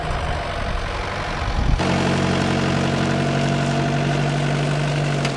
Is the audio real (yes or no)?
yes